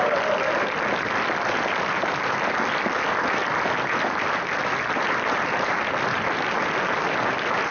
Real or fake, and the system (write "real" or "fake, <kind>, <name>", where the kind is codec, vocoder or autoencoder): real